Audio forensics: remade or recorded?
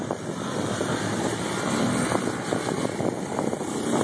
recorded